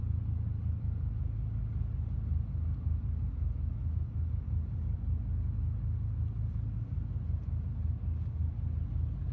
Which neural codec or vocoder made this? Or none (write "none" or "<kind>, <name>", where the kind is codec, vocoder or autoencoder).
none